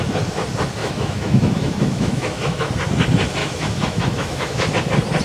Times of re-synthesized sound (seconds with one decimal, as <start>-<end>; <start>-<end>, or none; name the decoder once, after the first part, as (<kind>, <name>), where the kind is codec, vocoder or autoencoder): 0.8-2.7 (autoencoder, DAC-VAE); 3.4-4.7

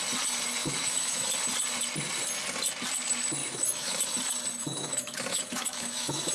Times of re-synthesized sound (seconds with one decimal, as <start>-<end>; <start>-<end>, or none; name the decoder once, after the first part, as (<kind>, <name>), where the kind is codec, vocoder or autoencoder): 0.6-1.3 (autoencoder, DAC-VAE); 3.4-4.0; 4.6-6.3

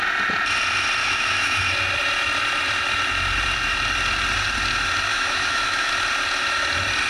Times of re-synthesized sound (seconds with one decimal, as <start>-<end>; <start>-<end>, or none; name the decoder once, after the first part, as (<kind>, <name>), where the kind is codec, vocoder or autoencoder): 1.0-1.6 (autoencoder, DAC-VAE); 5.1-5.9

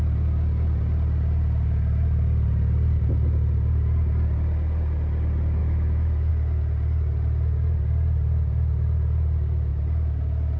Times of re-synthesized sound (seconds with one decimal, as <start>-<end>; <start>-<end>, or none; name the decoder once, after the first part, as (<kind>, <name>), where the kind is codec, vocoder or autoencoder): 5.6-6.3 (autoencoder, DAC-VAE)

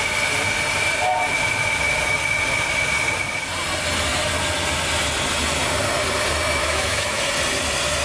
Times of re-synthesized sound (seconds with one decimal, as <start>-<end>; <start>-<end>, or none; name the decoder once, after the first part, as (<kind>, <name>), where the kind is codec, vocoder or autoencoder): 6.6-7.3 (autoencoder, DAC-VAE)